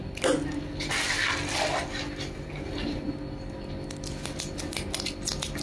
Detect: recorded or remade recorded